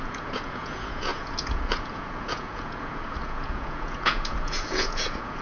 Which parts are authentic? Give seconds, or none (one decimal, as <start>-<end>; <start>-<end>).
none